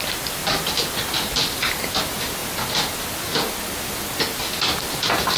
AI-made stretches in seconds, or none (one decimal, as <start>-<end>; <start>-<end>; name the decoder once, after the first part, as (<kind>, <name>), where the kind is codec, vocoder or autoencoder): none

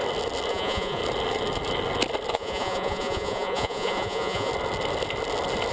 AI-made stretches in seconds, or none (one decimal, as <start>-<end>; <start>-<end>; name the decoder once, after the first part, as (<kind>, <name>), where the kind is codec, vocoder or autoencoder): 0.5-1.0 (vocoder, Vocos); 2.3-4.5

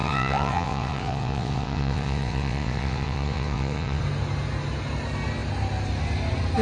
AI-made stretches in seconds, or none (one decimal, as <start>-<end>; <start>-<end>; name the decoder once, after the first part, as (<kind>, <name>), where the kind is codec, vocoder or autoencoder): 0.0-4.0 (vocoder, WaveNeXt)

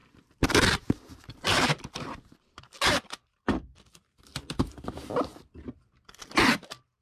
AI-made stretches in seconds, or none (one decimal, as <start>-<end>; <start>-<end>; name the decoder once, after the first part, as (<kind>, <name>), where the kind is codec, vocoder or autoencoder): 0.0-4.2 (vocoder, BigVGAN v2)

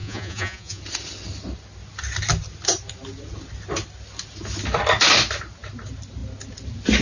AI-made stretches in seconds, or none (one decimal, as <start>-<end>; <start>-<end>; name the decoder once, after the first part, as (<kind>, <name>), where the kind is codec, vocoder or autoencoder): 0.0-0.8 (vocoder, Vocos)